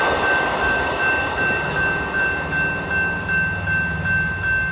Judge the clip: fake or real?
real